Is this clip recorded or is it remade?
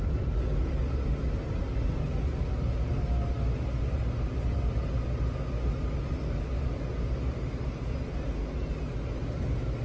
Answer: recorded